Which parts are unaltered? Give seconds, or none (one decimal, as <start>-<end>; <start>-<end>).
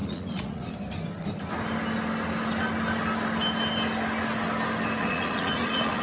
0.7-5.0